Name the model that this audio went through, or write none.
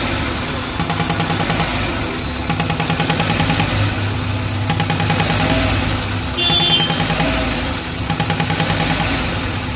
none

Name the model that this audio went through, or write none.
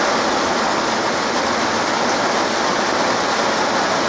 none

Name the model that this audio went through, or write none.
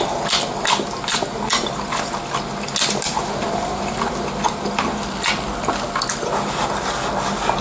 none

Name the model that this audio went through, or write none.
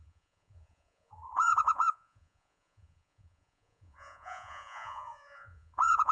vocoder, Vocos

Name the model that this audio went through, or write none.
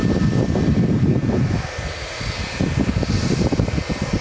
none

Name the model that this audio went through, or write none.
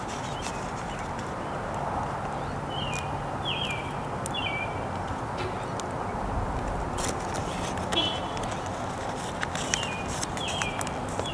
none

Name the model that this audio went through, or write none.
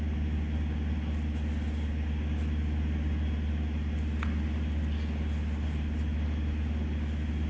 none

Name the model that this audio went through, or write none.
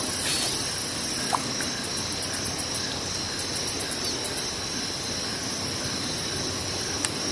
none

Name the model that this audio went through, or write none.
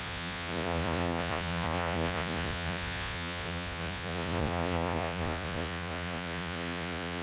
vocoder, Vocos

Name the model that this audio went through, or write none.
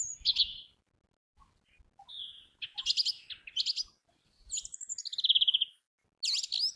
none